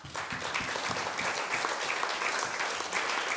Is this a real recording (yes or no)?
yes